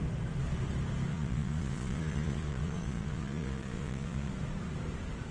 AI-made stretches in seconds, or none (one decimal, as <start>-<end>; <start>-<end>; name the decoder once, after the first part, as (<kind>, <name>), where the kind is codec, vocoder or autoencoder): 1.1-4.3 (vocoder, Vocos)